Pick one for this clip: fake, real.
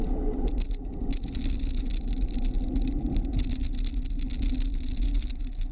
real